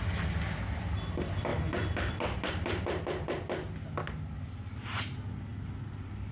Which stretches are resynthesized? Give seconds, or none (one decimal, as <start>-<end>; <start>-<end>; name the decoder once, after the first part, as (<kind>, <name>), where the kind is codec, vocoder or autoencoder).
none

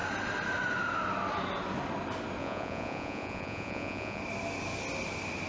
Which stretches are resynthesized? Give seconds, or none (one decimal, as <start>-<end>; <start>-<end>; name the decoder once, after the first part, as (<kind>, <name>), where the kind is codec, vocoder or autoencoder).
2.4-4.2 (vocoder, Vocos)